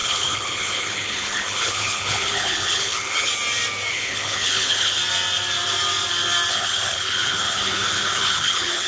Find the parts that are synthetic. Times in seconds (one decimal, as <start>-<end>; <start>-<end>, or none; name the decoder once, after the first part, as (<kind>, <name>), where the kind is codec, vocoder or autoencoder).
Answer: 0.0-3.3 (codec, HILCodec); 3.9-5.0; 6.5-8.9